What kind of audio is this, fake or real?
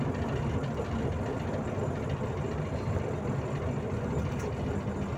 real